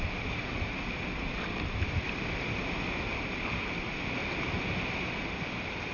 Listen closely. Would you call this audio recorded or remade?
recorded